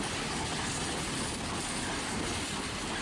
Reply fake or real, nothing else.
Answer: real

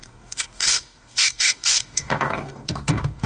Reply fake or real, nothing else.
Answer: fake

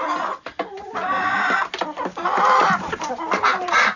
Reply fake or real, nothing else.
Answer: fake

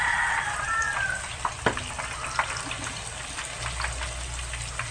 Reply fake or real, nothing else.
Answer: real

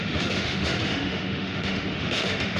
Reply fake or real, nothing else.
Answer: fake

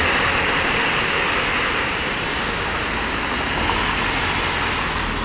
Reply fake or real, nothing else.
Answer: real